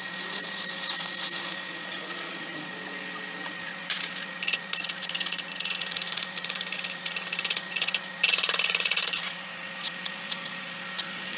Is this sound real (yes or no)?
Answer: no